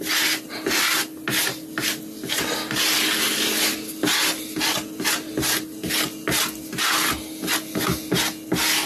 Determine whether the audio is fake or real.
real